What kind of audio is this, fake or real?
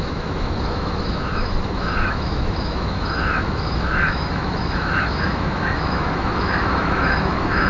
fake